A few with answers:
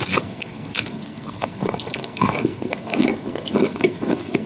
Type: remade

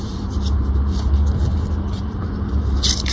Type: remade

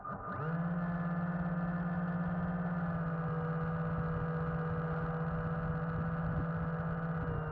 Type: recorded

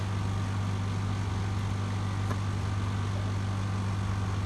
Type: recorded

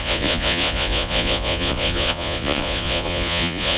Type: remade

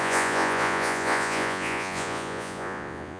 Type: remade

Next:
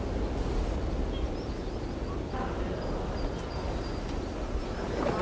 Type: recorded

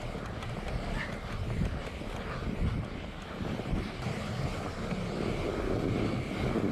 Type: recorded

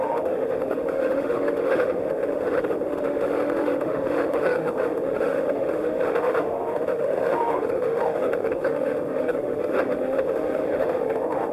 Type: remade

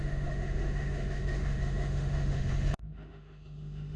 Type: remade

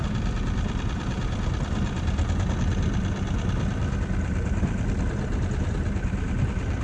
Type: remade